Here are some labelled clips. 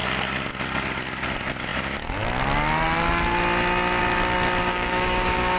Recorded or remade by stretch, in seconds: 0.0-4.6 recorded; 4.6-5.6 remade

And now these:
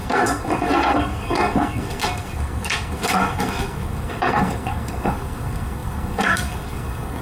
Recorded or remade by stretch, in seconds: 0.0-7.2 remade

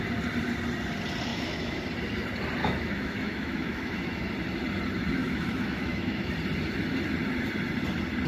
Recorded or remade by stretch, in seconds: 0.0-1.3 recorded; 1.3-1.8 remade; 1.8-2.6 recorded; 2.6-4.3 remade; 4.3-5.2 recorded; 5.2-6.3 remade; 6.3-8.3 recorded

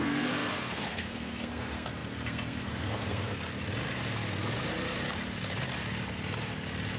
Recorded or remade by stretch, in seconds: 0.0-3.3 remade; 3.3-7.0 recorded

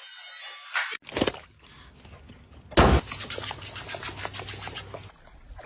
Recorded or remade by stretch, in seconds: 0.0-5.7 recorded